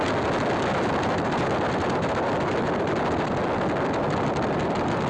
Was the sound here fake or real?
real